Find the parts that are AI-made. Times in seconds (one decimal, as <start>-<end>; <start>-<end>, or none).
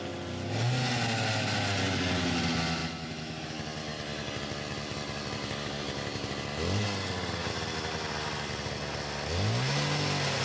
none